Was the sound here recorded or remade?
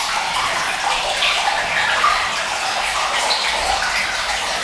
recorded